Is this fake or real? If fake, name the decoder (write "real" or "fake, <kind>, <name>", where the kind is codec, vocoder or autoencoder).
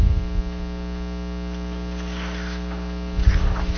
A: real